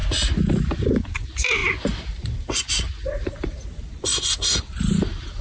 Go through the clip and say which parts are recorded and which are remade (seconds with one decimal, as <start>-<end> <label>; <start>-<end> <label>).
0.0-0.9 recorded; 0.9-4.1 remade; 4.1-4.6 recorded; 4.6-5.4 remade